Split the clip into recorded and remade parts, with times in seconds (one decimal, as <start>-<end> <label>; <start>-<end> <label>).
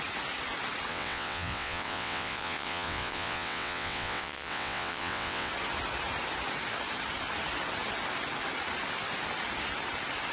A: 0.0-0.9 recorded; 0.9-5.5 remade; 5.5-10.3 recorded